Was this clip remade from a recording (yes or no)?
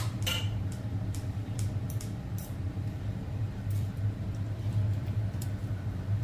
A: yes